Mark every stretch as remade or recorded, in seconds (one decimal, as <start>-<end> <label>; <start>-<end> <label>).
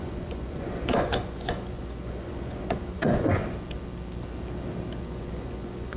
0.0-3.4 remade; 3.4-5.0 recorded; 5.0-6.0 remade